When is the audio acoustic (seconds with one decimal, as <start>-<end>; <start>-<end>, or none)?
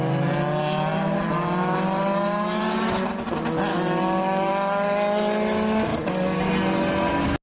0.0-3.7; 4.5-5.9; 6.4-7.4